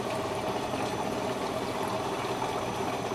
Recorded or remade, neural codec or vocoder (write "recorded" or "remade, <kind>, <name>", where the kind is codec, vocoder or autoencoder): recorded